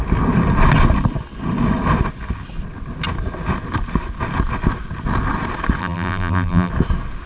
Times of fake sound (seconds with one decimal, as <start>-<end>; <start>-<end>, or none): 5.8-6.7